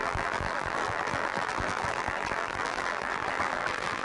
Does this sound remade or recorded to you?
remade